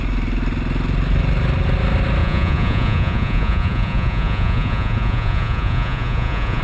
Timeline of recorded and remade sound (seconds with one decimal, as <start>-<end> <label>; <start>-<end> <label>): 0.0-2.2 recorded; 2.2-6.6 remade